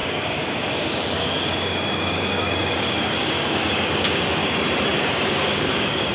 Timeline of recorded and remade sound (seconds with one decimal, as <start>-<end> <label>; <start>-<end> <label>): 0.0-4.4 remade; 4.4-5.0 recorded; 5.0-6.1 remade